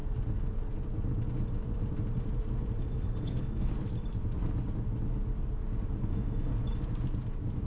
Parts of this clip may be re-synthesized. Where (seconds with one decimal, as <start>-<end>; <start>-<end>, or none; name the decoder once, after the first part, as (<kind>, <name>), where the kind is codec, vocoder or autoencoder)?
2.8-3.7 (codec, SNAC); 6.0-6.5